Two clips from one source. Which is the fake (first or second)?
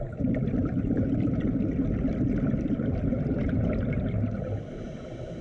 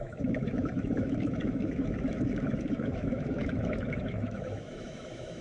second